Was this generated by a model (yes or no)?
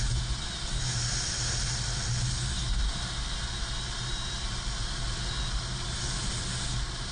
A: no